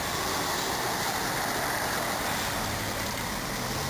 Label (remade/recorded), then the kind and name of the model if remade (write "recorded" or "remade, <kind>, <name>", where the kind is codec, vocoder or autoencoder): recorded